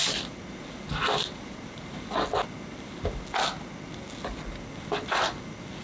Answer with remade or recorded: recorded